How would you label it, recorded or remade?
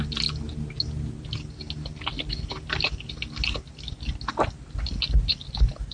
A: recorded